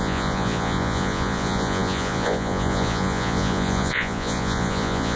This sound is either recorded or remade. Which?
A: remade